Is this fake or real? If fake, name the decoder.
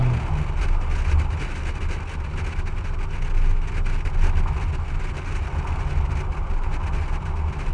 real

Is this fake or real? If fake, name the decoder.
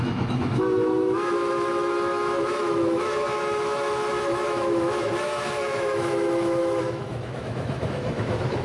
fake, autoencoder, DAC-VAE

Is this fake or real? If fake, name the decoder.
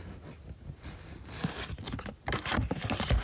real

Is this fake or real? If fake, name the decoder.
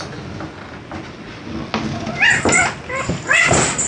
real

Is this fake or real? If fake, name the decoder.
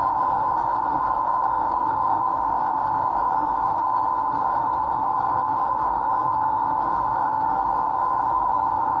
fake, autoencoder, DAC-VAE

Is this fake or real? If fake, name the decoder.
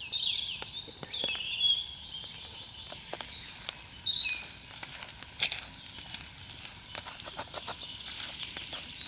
real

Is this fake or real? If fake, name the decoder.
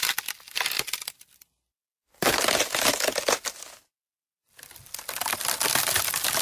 real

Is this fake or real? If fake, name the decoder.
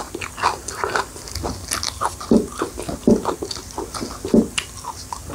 real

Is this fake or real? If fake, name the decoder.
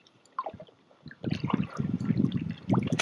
real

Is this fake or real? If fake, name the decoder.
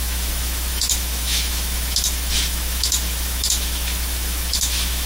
fake, autoencoder, DAC-VAE